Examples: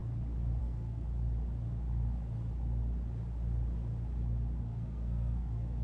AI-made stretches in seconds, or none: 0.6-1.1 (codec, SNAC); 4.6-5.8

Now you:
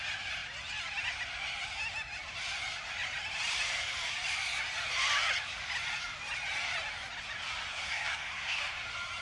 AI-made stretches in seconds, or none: 7.7-8.6 (codec, SNAC)

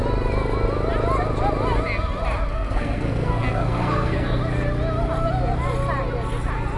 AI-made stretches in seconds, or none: 2.5-4.4 (codec, SNAC)

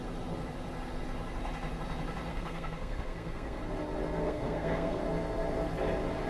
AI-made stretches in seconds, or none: 2.3-3.6 (codec, SNAC); 4.2-5.0